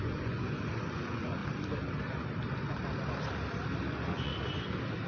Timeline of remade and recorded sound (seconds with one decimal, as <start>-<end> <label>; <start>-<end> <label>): 0.0-1.4 remade; 1.4-3.9 recorded; 3.9-4.3 remade; 4.3-5.1 recorded